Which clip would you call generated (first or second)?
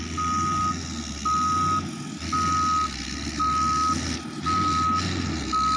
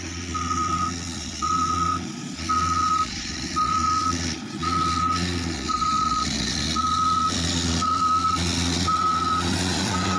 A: second